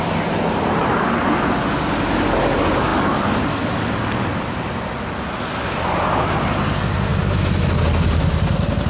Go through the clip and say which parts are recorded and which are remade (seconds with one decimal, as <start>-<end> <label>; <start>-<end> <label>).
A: 0.0-8.9 recorded